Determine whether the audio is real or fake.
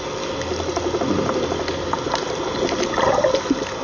real